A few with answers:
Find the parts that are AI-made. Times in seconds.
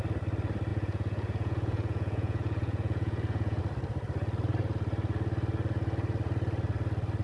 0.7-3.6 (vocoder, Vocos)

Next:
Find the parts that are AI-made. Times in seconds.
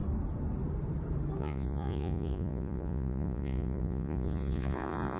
1.4-5.2 (vocoder, Vocos)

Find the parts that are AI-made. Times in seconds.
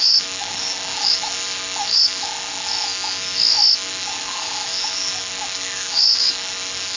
0.0-2.7 (autoencoder, DAC-VAE); 3.7-7.0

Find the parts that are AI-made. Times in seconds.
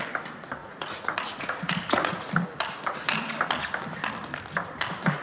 0.6-2.3 (vocoder, Vocos)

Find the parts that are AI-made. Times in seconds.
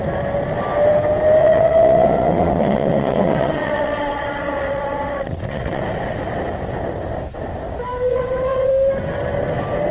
1.4-5.8 (vocoder, WaveNeXt); 8.1-8.7